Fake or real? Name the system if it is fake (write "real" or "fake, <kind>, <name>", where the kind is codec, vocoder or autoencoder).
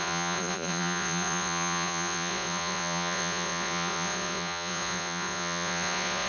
fake, vocoder, Vocos